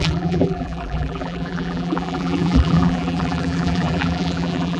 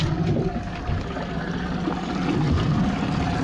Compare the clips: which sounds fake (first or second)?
first